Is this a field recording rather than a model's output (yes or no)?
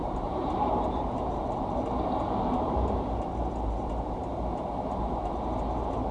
no